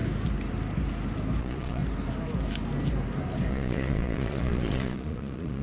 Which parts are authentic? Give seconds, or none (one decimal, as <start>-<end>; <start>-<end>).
0.0-1.4; 1.8-3.5